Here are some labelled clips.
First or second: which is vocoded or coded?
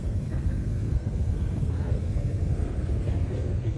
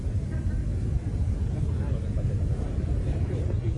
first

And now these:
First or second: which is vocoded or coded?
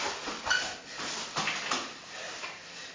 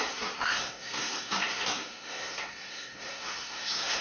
second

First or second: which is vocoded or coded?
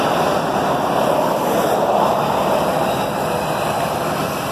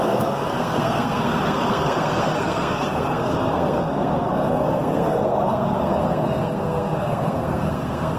second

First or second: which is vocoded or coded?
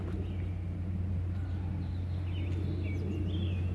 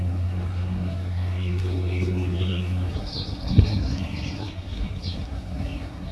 second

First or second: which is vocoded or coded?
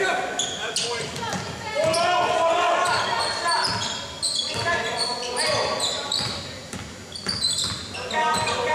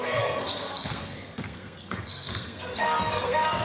second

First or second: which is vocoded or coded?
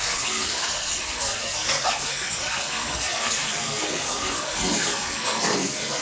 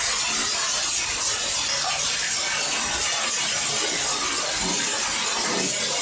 first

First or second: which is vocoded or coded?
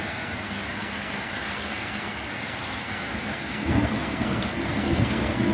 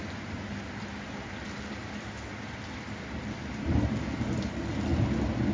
first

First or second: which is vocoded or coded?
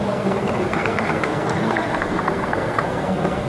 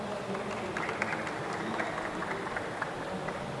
first